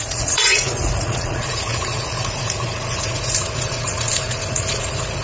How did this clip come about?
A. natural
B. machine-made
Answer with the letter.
B